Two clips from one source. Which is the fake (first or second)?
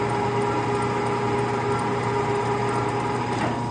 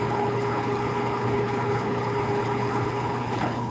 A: second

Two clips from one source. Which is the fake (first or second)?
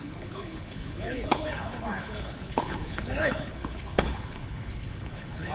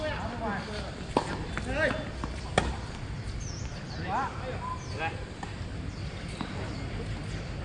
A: first